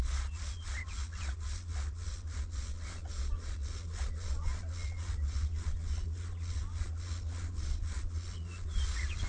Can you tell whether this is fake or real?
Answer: fake